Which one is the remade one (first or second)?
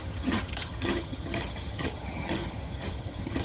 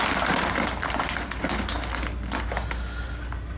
first